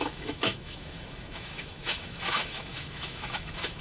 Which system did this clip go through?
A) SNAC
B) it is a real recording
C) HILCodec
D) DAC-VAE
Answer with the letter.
D